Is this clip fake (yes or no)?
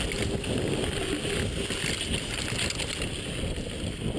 no